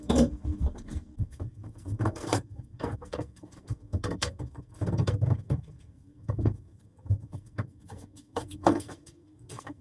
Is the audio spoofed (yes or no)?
yes